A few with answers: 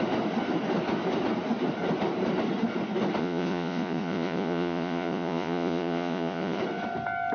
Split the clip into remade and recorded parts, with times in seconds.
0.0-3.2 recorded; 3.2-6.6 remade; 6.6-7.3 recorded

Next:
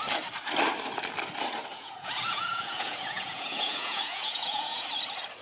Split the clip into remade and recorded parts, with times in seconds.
0.0-1.7 recorded; 1.7-4.9 remade; 4.9-5.4 recorded

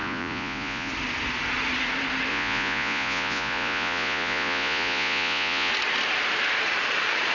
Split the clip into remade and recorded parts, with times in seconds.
0.0-0.9 remade; 0.9-2.3 recorded; 2.3-5.7 remade; 5.7-7.3 recorded

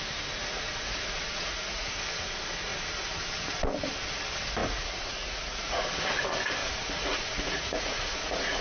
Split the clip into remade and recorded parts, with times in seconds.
0.0-0.4 recorded; 0.4-1.9 remade; 1.9-4.6 recorded; 4.6-5.9 remade; 5.9-6.6 recorded; 6.6-8.6 remade

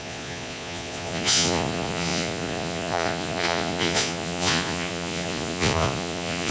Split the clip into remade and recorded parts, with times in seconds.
0.0-6.5 remade

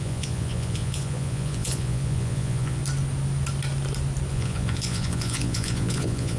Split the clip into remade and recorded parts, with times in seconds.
0.0-2.8 remade; 2.8-4.3 recorded; 4.3-6.4 remade

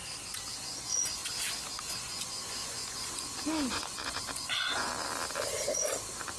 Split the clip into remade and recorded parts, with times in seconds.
0.0-0.6 recorded; 0.6-1.2 remade; 1.2-1.8 recorded; 1.8-4.9 remade; 4.9-6.4 recorded

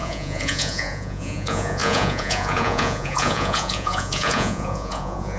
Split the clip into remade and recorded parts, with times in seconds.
0.0-5.4 remade